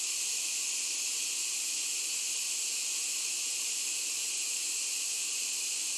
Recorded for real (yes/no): yes